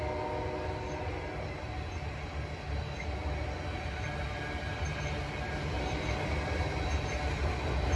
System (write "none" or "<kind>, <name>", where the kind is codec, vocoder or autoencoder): none